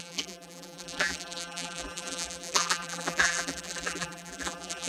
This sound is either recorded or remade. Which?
remade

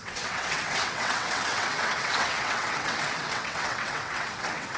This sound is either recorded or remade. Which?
remade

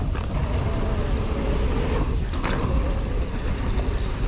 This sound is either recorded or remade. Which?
recorded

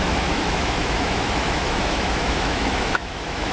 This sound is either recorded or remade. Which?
remade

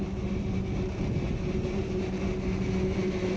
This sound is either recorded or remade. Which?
recorded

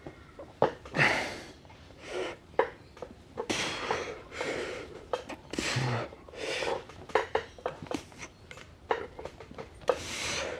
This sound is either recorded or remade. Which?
remade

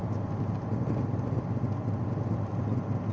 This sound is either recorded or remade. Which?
recorded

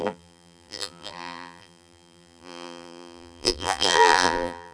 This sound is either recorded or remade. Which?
remade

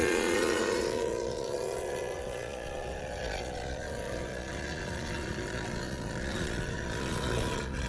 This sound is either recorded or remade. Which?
remade